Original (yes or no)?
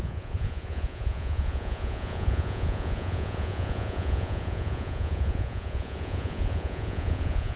no